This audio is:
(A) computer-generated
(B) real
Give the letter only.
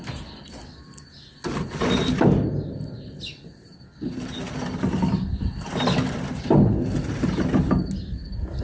B